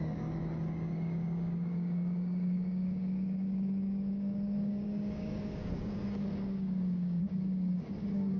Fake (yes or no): yes